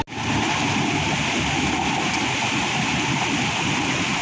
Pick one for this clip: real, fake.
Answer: real